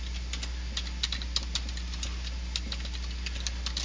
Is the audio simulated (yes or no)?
no